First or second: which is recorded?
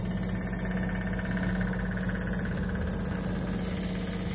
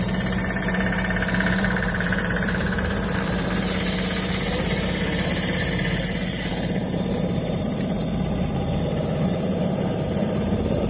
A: first